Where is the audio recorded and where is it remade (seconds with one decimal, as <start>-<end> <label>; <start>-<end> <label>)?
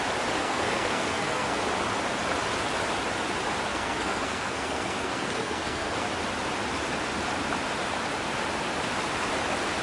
0.0-0.4 recorded; 0.4-1.6 remade; 1.6-3.7 recorded; 3.7-6.1 remade; 6.1-9.8 recorded